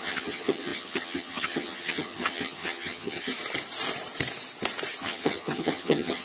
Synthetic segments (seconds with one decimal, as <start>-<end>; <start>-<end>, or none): 0.0-3.3; 5.0-6.2